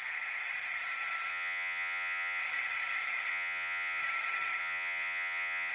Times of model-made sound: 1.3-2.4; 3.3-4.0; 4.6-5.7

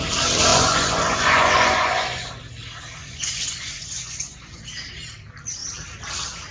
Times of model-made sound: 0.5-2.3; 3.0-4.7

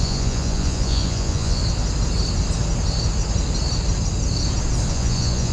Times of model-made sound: 0.0-1.6; 4.9-5.5

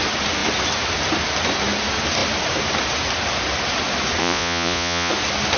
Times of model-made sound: 4.2-5.1

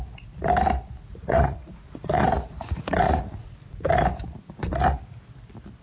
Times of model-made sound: 1.1-3.9

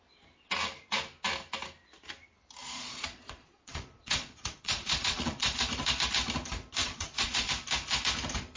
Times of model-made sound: 2.6-5.6; 6.8-7.5